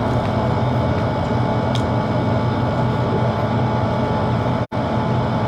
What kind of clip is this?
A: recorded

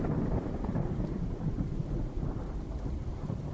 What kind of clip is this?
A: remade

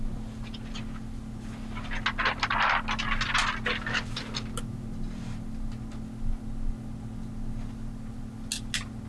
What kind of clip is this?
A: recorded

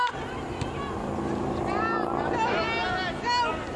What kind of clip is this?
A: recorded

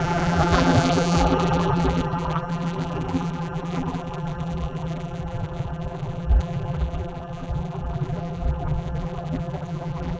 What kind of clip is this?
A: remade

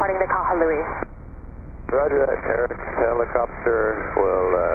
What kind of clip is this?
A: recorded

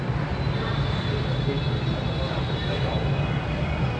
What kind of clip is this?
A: recorded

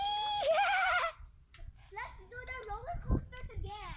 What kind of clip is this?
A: remade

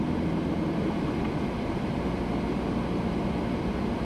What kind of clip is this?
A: recorded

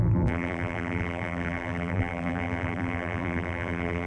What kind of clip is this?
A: remade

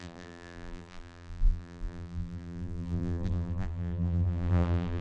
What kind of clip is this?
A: remade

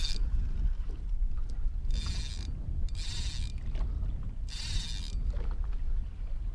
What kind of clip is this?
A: recorded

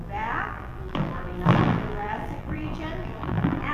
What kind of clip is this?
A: remade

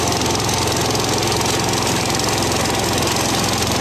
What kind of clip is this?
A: recorded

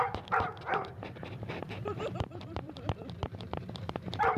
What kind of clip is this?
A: remade